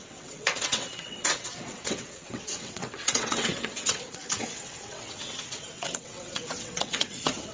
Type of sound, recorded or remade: remade